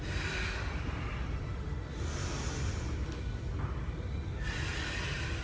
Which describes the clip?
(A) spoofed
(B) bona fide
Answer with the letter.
B